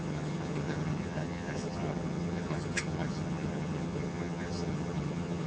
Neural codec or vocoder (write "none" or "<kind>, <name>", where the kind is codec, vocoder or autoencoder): vocoder, HiFi-GAN